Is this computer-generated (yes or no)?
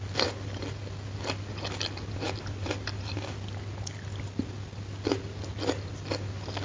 no